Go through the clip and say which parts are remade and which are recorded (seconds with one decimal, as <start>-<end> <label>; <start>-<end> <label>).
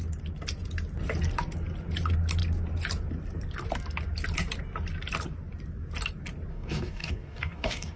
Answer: 0.0-6.5 recorded; 6.5-8.0 remade